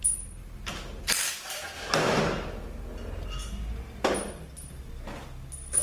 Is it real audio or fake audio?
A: real